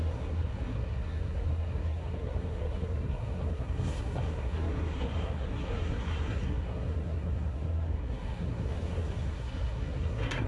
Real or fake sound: fake